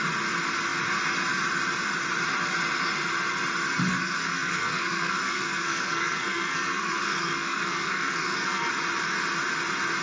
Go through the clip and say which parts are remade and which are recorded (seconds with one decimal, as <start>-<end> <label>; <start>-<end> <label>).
0.0-3.9 recorded; 3.9-8.7 remade; 8.7-10.0 recorded